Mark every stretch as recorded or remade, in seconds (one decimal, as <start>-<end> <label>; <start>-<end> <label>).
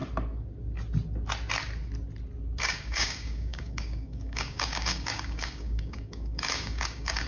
0.0-2.6 recorded; 2.6-7.3 remade